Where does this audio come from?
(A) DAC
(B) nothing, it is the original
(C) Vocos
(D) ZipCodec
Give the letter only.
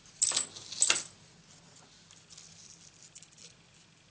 B